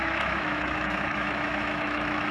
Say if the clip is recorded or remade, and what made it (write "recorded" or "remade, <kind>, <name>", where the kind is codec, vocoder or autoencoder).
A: remade, autoencoder, DAC-VAE